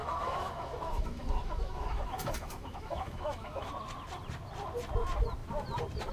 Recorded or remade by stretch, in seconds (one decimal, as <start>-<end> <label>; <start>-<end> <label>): 0.0-3.7 remade; 3.7-6.1 recorded